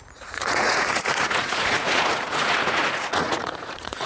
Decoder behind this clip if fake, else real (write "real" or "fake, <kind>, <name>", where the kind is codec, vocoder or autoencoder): fake, vocoder, Vocos